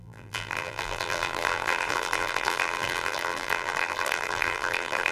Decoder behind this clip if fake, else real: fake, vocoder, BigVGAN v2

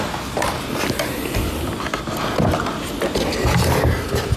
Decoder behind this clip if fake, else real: real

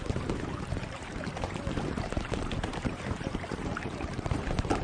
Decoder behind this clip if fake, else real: fake, vocoder, BigVGAN v2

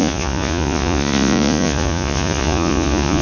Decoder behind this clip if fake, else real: fake, vocoder, Vocos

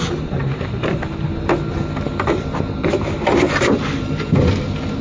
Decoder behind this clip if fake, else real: real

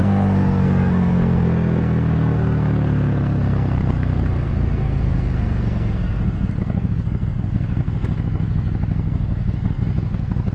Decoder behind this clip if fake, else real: fake, codec, SNAC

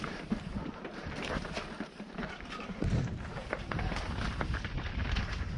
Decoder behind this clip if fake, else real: fake, vocoder, BigVGAN v2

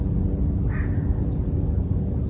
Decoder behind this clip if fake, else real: real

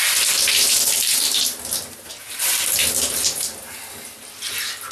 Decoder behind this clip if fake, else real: fake, vocoder, BigVGAN v2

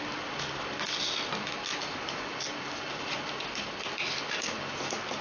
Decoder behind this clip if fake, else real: real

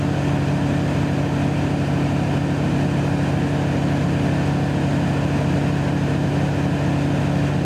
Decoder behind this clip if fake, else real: real